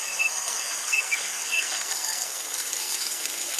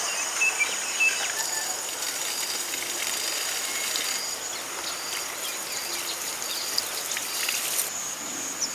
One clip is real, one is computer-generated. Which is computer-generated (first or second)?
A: first